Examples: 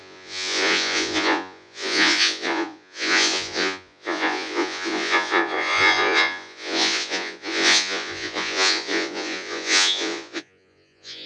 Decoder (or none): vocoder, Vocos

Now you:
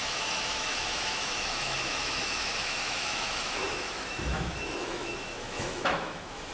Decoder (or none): autoencoder, DAC-VAE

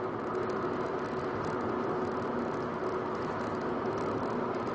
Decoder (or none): none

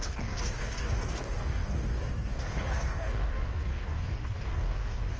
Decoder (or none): codec, DAC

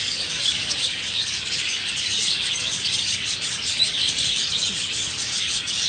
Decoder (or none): codec, DAC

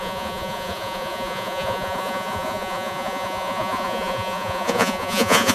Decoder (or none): vocoder, Vocos